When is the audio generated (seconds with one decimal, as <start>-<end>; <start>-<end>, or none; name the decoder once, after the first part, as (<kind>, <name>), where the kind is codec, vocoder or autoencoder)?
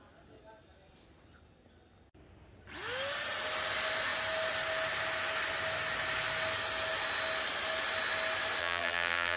8.6-9.4 (vocoder, BigVGAN v2)